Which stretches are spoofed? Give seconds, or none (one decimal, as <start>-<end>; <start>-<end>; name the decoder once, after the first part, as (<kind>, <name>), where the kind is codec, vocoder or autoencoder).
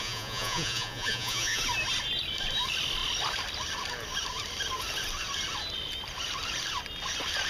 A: 0.0-1.6 (vocoder, Vocos)